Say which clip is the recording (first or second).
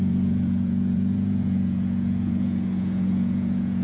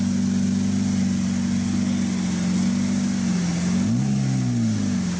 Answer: second